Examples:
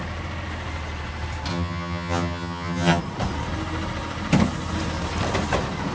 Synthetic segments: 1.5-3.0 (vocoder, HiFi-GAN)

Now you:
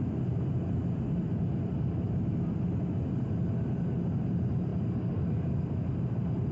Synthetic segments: none

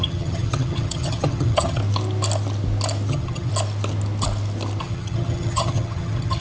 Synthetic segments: 0.0-1.8 (vocoder, HiFi-GAN); 3.1-3.5; 4.8-6.4

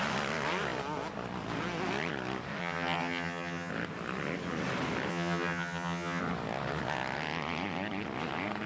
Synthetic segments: 2.6-3.7 (vocoder, HiFi-GAN); 5.1-6.2

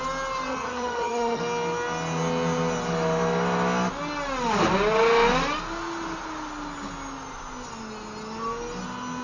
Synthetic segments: 0.5-1.4 (vocoder, HiFi-GAN)

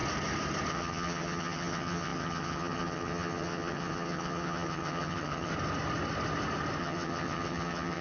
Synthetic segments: 0.7-5.5 (vocoder, HiFi-GAN); 6.8-8.0

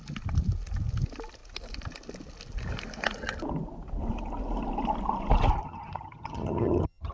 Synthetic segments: 5.6-7.1 (vocoder, HiFi-GAN)

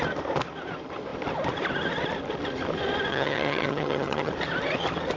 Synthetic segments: 3.1-4.3 (vocoder, HiFi-GAN)